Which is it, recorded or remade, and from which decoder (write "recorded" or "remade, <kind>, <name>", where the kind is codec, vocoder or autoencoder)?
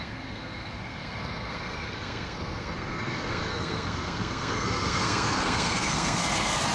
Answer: remade, codec, SNAC